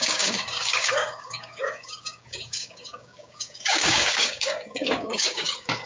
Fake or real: fake